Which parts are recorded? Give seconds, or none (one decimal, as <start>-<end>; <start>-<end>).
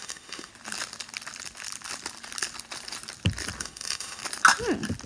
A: 0.5-3.6; 4.2-5.1